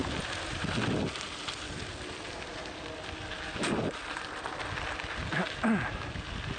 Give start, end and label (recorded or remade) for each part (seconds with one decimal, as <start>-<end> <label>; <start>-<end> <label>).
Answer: 0.0-6.6 recorded